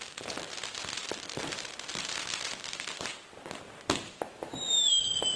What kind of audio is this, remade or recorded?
recorded